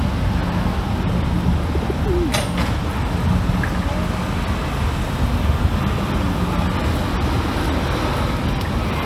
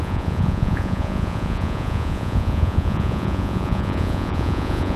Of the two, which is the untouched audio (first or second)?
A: first